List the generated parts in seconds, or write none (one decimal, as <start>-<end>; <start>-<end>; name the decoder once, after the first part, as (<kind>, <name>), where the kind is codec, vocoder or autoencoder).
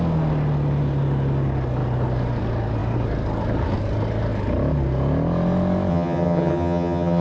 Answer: 5.9-7.2 (vocoder, HiFi-GAN)